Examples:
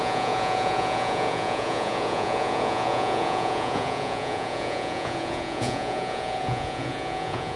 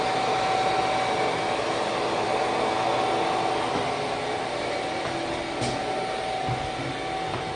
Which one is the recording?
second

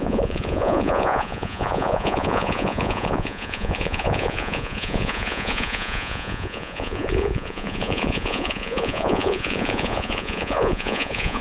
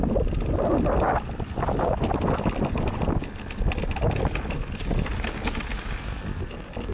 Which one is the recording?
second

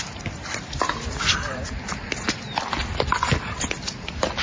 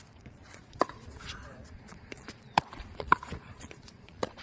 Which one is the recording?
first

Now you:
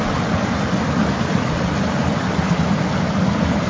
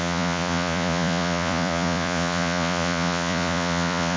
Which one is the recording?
first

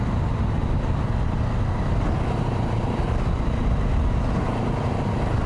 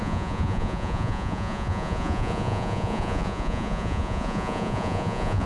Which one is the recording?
first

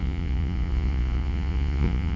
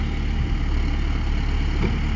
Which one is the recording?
second